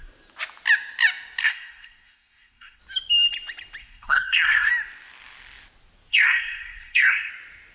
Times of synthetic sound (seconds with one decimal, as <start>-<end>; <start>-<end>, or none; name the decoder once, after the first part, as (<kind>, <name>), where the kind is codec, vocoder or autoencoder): 1.4-2.8 (codec, SNAC); 3.8-4.7; 6.1-7.3